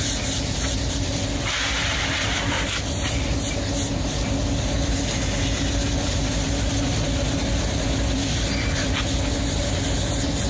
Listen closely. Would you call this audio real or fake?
real